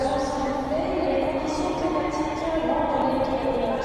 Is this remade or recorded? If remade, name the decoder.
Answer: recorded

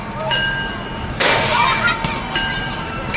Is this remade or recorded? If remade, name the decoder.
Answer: recorded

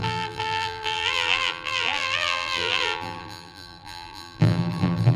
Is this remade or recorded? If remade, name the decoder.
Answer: remade, vocoder, BigVGAN v2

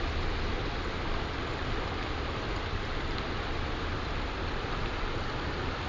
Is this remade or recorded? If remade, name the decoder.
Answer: recorded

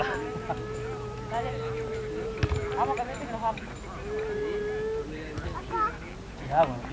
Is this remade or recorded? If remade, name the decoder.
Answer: recorded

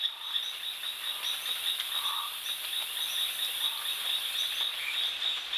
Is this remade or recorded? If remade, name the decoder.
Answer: recorded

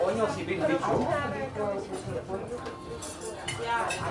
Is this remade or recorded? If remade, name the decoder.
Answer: recorded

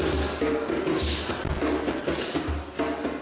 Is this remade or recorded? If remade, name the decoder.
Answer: recorded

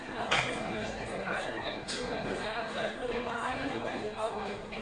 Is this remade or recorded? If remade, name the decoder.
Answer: remade, codec, SNAC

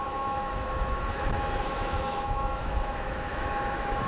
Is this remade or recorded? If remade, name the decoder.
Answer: remade, autoencoder, DAC-VAE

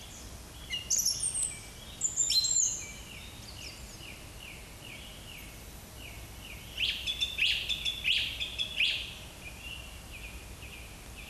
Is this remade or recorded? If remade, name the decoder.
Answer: recorded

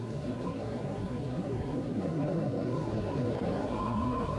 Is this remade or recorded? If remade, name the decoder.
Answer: remade, codec, SNAC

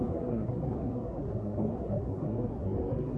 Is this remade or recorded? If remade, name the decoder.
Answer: remade, codec, SNAC